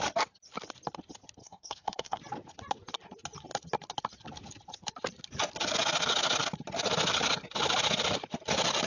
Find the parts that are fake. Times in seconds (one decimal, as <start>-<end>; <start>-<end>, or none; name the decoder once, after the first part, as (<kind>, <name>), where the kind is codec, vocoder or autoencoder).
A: 1.4-2.2 (codec, SNAC)